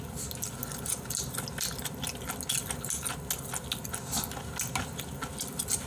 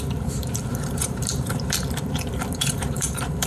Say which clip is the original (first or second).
first